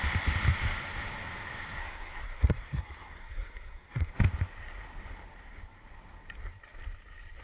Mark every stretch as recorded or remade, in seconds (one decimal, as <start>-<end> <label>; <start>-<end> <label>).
0.0-1.8 recorded; 1.8-4.1 remade; 4.1-7.4 recorded